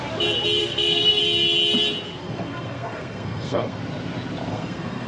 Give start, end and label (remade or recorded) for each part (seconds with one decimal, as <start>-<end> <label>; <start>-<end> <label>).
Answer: 0.0-0.6 recorded; 0.6-1.2 remade; 1.2-2.2 recorded; 2.2-3.8 remade; 3.8-4.5 recorded; 4.5-5.1 remade